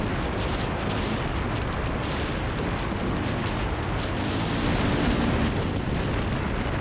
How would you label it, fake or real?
real